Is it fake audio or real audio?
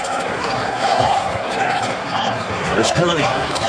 fake